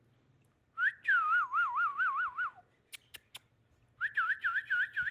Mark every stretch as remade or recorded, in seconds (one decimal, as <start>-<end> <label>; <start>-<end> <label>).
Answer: 0.0-5.1 recorded